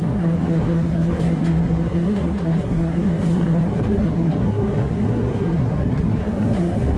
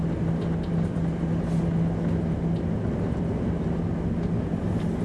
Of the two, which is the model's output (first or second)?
first